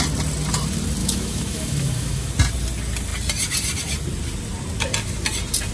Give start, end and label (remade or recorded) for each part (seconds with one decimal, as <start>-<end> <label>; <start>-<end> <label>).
0.0-1.0 recorded; 1.0-2.3 remade; 2.3-5.7 recorded